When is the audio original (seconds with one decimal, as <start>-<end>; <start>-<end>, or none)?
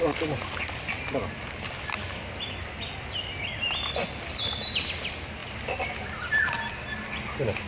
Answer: 0.0-7.7